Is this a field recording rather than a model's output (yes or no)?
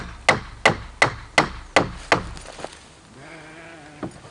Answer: yes